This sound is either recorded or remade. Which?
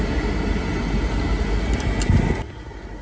recorded